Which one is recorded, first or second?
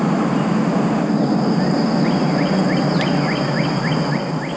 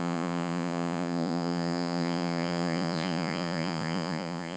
first